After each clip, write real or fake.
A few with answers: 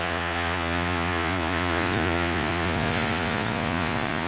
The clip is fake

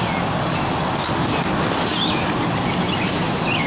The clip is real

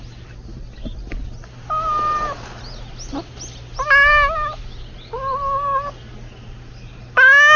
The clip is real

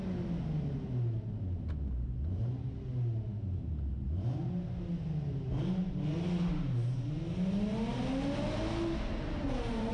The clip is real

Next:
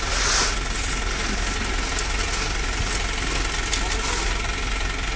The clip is real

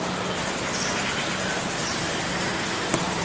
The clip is real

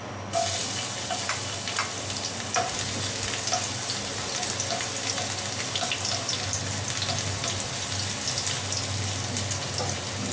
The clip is real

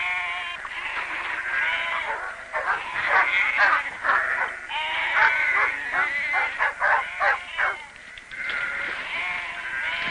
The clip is real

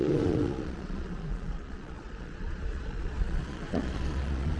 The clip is fake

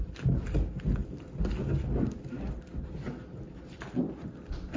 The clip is real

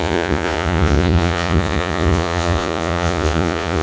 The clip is fake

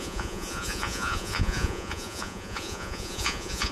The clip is fake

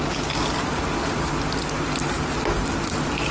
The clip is real